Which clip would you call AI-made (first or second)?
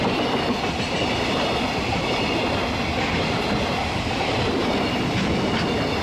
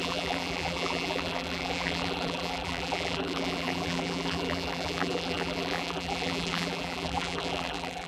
second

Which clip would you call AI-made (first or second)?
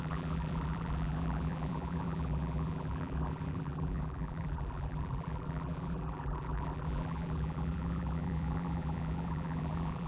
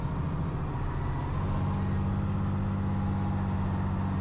first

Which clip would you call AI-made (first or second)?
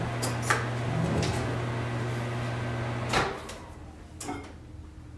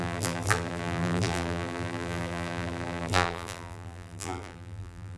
second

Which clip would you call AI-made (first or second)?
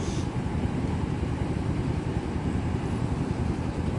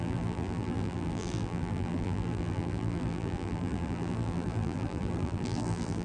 second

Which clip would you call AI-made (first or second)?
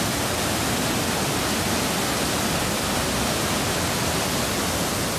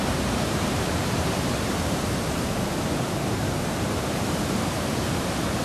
second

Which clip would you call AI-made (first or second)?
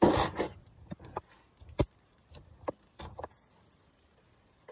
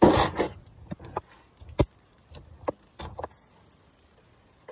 first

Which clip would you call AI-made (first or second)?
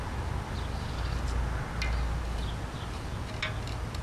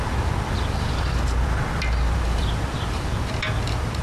second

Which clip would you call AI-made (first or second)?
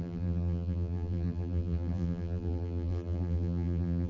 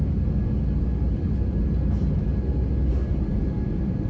first